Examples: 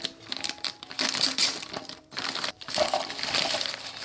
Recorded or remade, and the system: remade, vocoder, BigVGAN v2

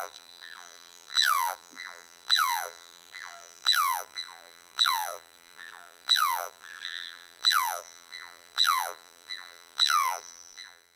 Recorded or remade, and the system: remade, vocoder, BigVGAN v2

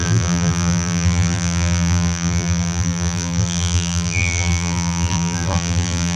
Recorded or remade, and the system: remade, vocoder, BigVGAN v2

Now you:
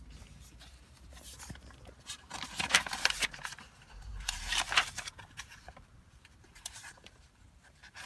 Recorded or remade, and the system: remade, vocoder, BigVGAN v2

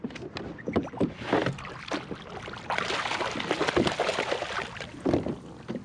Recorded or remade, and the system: recorded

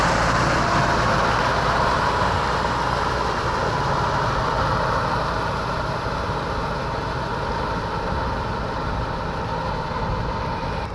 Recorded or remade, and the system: recorded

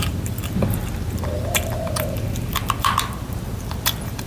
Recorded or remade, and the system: remade, vocoder, BigVGAN v2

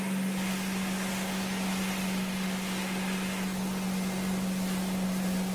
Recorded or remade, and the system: recorded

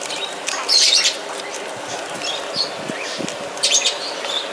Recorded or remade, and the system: recorded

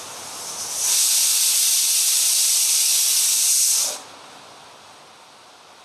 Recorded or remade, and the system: remade, vocoder, BigVGAN v2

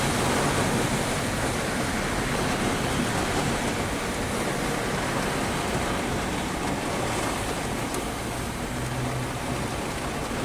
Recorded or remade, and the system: recorded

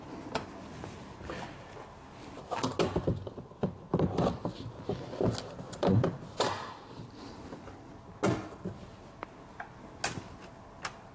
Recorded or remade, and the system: recorded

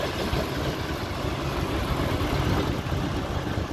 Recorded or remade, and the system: recorded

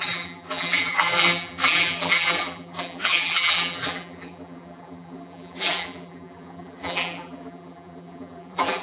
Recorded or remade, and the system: remade, vocoder, BigVGAN v2